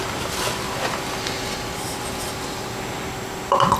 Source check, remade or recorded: recorded